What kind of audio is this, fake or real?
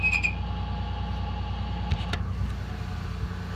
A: real